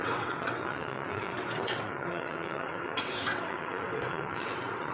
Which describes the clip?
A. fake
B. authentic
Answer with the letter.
A